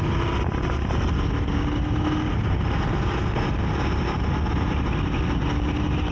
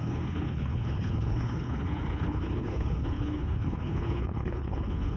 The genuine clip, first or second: first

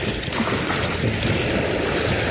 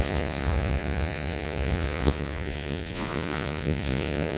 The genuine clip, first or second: first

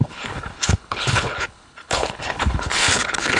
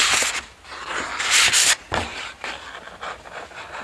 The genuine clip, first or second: second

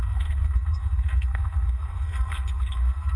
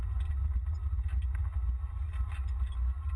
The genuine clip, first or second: second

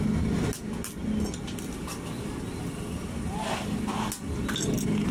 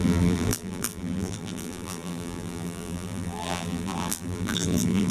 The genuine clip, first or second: first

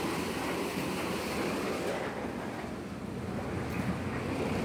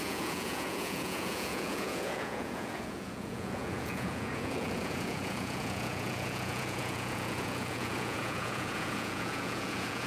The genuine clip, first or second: first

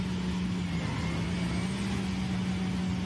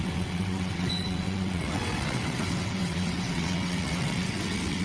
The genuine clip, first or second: first